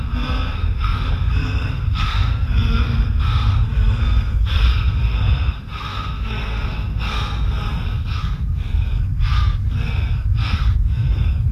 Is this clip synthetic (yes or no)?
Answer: yes